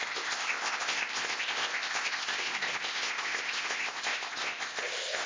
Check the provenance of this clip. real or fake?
fake